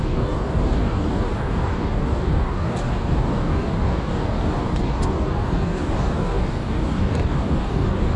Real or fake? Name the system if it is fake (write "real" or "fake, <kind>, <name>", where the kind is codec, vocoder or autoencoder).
fake, codec, DAC